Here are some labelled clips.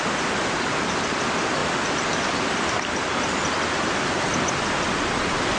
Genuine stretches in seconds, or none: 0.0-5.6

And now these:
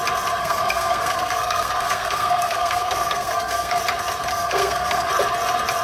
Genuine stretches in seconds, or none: 0.0-0.4; 3.8-4.3; 5.1-5.8